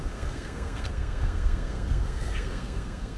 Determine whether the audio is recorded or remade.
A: remade